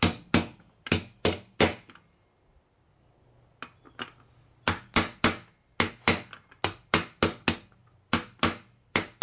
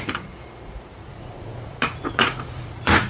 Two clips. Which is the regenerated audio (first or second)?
second